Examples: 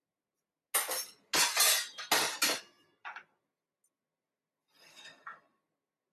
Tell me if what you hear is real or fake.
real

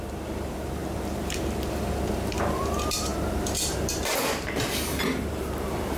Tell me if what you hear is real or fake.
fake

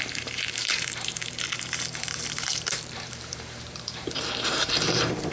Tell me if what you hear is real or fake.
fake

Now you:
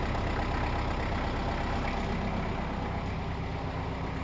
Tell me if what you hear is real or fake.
real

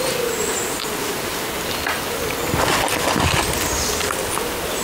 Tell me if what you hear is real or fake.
real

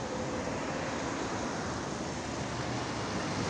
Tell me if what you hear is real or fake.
real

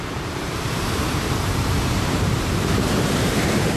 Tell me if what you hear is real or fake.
fake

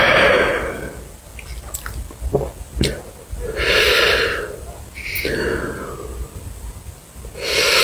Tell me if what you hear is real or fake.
real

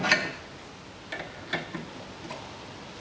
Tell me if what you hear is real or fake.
real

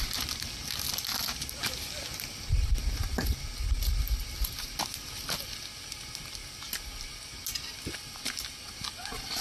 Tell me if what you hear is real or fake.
real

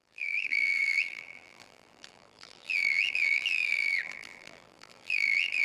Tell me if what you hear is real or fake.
fake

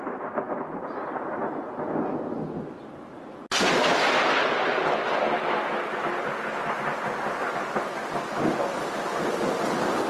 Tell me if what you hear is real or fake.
real